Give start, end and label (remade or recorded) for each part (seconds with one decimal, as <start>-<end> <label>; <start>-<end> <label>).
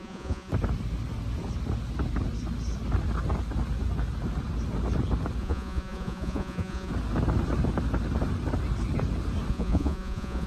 0.0-0.5 remade; 0.5-5.4 recorded; 5.4-6.9 remade; 6.9-9.5 recorded; 9.5-10.5 remade